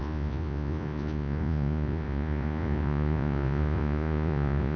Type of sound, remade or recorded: remade